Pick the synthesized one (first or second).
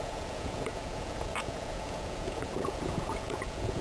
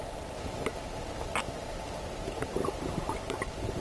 first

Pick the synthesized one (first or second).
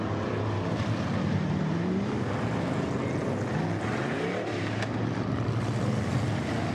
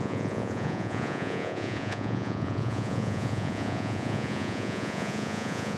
second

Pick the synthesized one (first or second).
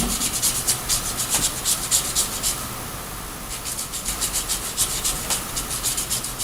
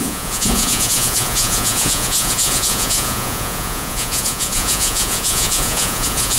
second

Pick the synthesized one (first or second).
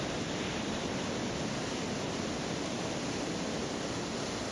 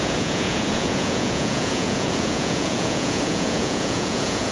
second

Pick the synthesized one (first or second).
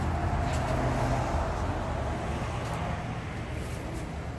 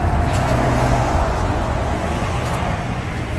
second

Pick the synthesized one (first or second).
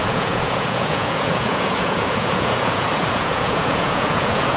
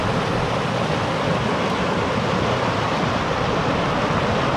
first